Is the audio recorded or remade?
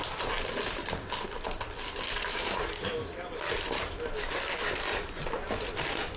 recorded